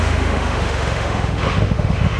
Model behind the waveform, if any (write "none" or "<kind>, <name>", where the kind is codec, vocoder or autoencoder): autoencoder, DAC-VAE